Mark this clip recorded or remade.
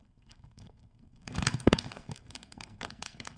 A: remade